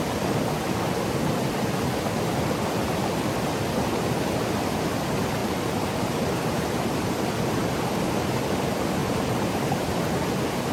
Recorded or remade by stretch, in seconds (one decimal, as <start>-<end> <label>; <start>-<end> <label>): 0.0-5.4 recorded; 5.4-8.1 remade; 8.1-9.0 recorded; 9.0-9.8 remade; 9.8-10.7 recorded